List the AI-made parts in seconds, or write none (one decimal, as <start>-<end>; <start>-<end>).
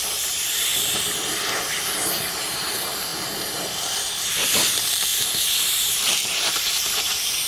0.0-0.7; 2.3-5.1; 5.8-7.5